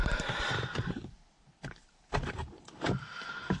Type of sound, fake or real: fake